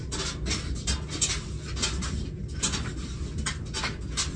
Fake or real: real